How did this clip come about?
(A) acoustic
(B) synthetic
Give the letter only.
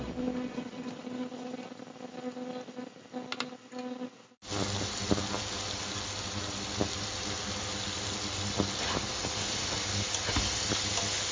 A